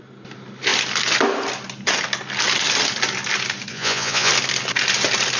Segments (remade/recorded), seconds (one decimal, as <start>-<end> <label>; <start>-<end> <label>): 0.0-3.7 recorded; 3.7-4.3 remade; 4.3-5.4 recorded